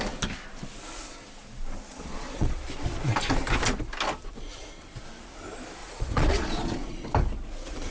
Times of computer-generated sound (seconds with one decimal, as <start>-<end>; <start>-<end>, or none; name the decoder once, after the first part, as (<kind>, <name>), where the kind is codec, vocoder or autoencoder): 1.9-2.6 (vocoder, Vocos); 5.8-7.1